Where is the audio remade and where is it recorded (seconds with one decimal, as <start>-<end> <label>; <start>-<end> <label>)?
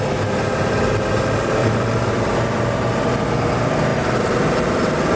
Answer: 0.0-1.6 recorded; 1.6-2.6 remade; 2.6-5.2 recorded